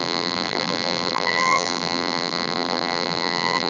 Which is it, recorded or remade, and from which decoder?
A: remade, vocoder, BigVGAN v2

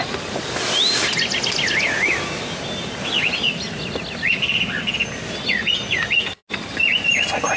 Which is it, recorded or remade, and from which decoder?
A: recorded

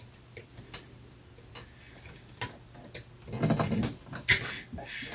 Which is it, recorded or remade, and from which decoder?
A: recorded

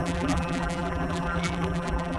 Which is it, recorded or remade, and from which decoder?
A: remade, vocoder, BigVGAN v2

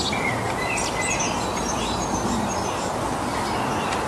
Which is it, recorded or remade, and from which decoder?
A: recorded